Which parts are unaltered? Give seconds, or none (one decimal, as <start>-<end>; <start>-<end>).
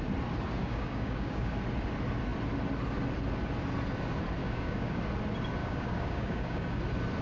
0.0-0.6; 1.5-4.4; 5.0-5.6; 6.8-7.2